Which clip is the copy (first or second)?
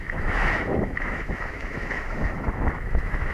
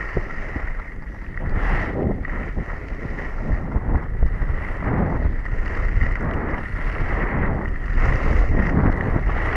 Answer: first